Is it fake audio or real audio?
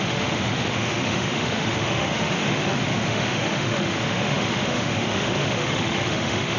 fake